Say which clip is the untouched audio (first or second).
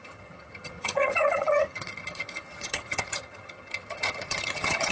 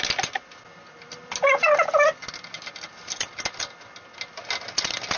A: second